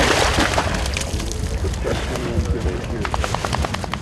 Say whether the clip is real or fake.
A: real